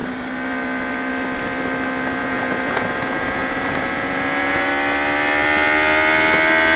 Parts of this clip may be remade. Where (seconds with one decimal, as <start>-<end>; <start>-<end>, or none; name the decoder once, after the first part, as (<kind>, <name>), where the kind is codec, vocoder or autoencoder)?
2.2-4.7 (vocoder, Vocos)

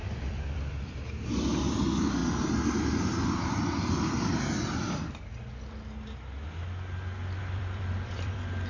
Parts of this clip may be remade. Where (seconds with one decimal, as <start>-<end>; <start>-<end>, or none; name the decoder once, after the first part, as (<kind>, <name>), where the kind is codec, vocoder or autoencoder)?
0.0-2.2 (vocoder, BigVGAN v2); 7.4-8.7

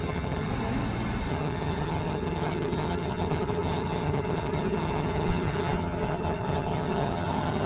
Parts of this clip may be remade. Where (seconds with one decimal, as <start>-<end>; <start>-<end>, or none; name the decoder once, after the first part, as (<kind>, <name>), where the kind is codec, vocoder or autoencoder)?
0.0-0.5 (vocoder, HiFi-GAN); 1.3-7.7